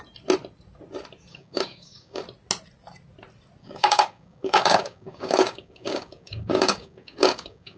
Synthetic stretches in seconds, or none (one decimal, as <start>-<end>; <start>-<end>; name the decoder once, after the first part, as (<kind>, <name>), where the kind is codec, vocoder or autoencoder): 1.3-2.2 (codec, DAC); 3.6-7.8

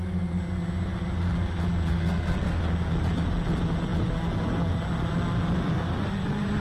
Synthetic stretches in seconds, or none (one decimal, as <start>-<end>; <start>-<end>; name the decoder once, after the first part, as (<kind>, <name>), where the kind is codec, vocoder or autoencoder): 1.9-2.6 (codec, SNAC)

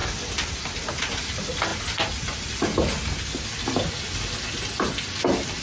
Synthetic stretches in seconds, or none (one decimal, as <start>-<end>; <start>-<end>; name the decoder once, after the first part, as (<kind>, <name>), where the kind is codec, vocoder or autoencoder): none

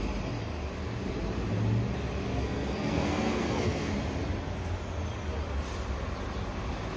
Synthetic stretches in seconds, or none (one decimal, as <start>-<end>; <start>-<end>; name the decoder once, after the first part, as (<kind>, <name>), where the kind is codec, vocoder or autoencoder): 2.3-3.9 (codec, SNAC)

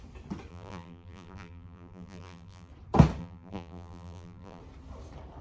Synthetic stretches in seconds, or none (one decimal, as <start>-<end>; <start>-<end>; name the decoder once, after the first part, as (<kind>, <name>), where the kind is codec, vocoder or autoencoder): 0.5-2.7 (vocoder, BigVGAN v2); 3.2-4.6

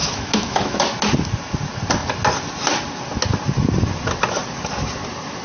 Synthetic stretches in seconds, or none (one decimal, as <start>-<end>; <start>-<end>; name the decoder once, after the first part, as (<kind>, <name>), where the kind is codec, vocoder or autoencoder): 0.0-0.8 (autoencoder, DAC-VAE)